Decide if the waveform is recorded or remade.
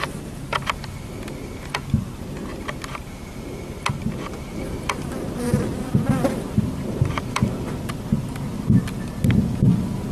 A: recorded